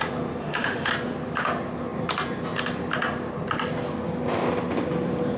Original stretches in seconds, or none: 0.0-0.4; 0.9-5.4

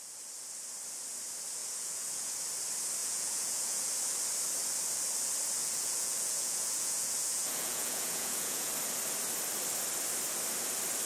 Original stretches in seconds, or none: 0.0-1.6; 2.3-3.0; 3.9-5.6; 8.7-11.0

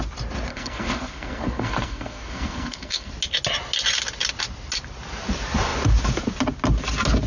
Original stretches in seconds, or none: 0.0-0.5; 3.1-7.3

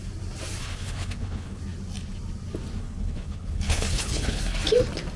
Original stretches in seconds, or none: 0.0-0.6; 1.6-2.8; 4.4-5.2

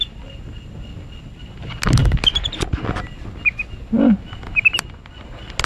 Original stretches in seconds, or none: 0.0-5.7

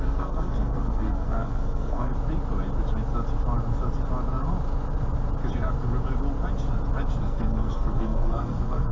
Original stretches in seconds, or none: 2.1-7.2

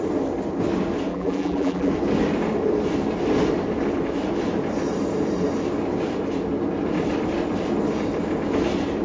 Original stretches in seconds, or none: 0.0-1.1; 1.9-9.0

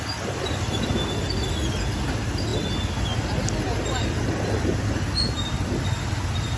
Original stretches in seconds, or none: 0.0-6.6